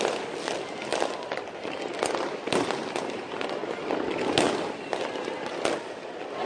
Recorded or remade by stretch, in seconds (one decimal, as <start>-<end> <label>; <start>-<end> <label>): 0.0-6.5 recorded